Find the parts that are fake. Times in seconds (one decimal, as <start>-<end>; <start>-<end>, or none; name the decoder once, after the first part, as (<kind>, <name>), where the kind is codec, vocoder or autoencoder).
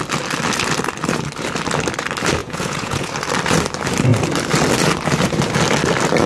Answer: 2.4-3.1 (vocoder, Vocos)